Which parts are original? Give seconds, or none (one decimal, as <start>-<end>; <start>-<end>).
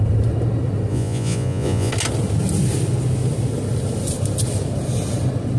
0.0-0.9; 1.9-5.6